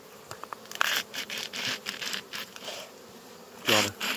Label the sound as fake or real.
fake